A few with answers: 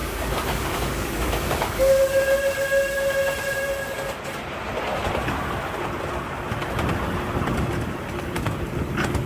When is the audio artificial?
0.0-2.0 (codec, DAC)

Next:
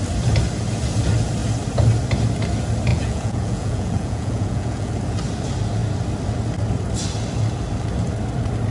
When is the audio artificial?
2.9-4.9 (vocoder, Vocos)

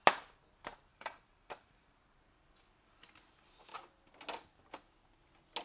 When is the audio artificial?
0.9-2.0 (vocoder, BigVGAN v2)

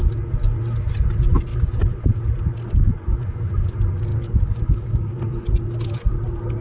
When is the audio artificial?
4.1-5.2 (codec, DAC)

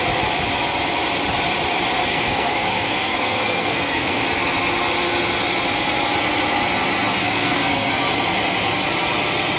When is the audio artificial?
2.1-4.2 (codec, SNAC); 7.2-8.0